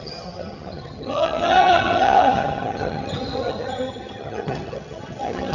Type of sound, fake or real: fake